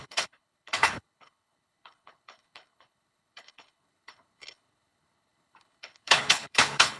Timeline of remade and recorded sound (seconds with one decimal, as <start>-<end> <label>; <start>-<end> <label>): 0.0-7.0 remade